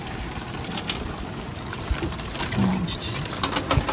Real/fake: real